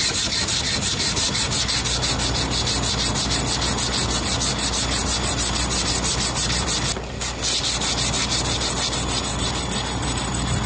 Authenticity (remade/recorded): recorded